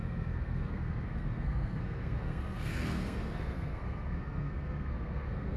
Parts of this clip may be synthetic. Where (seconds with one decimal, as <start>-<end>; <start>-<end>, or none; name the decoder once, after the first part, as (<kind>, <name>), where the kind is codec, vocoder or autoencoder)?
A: 0.0-5.6 (codec, SNAC)